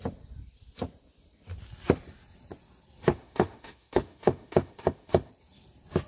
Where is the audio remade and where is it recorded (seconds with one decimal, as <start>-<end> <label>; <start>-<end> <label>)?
0.0-3.0 recorded; 3.0-5.3 remade; 5.3-6.1 recorded